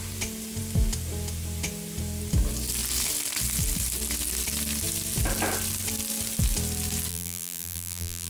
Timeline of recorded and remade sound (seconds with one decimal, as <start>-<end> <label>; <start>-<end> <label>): 0.0-7.1 recorded; 7.1-8.3 remade